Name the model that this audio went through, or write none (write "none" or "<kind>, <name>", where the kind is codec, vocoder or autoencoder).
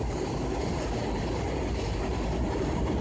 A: none